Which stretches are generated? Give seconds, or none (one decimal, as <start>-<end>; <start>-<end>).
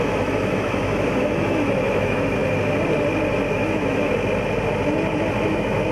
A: 0.0-2.4; 3.5-4.1; 5.4-5.9